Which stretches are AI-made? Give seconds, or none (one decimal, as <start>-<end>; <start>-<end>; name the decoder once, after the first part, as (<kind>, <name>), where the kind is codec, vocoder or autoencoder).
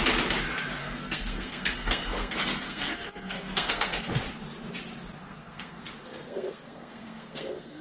0.8-4.0 (codec, SNAC); 5.2-7.8